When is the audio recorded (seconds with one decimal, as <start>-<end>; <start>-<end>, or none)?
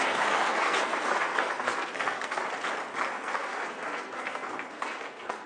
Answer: 2.4-3.1